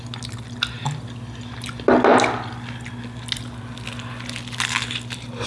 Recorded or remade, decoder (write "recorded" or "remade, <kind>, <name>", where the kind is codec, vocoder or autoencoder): recorded